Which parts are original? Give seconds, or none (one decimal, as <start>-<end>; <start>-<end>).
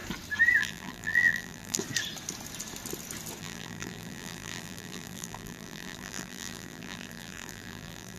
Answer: 0.0-0.6; 1.8-3.4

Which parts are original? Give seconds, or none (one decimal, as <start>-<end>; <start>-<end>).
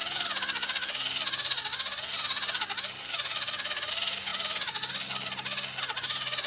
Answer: 0.0-6.5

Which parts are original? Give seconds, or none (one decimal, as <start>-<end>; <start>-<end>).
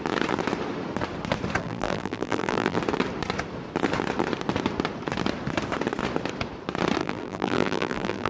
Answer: 0.0-1.6; 2.8-7.0